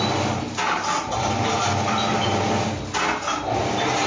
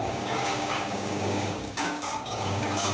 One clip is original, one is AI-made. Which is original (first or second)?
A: first